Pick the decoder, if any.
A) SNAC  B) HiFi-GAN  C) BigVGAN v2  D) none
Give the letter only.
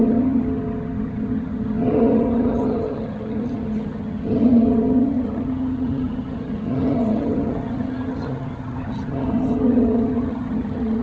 B